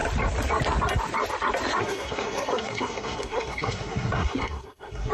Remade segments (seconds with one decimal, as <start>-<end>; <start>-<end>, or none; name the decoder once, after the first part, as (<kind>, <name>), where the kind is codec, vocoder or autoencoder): 1.8-5.1 (codec, SNAC)